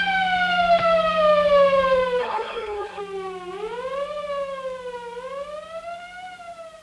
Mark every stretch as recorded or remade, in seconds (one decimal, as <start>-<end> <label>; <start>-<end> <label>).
0.0-2.2 recorded; 2.2-3.0 remade; 3.0-6.8 recorded